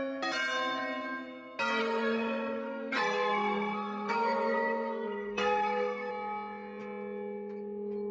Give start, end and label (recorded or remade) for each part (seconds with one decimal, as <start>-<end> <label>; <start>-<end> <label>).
0.0-1.8 recorded; 1.8-6.1 remade; 6.1-8.1 recorded